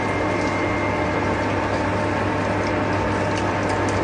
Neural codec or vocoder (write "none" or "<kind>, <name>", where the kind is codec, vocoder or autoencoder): none